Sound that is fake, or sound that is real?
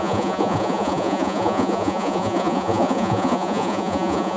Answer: fake